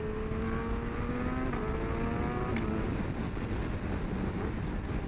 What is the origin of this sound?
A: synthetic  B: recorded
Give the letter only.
B